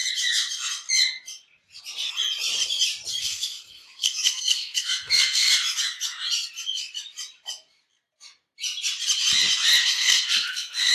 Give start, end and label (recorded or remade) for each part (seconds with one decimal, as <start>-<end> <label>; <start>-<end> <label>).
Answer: 0.0-3.2 recorded; 3.2-5.5 remade; 5.5-9.8 recorded; 9.8-10.9 remade